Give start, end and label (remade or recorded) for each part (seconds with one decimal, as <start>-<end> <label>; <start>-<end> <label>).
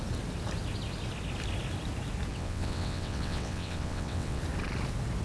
0.0-2.3 recorded; 2.3-4.4 remade; 4.4-5.2 recorded